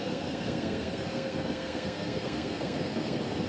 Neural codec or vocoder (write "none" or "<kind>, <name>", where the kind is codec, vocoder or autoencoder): codec, SNAC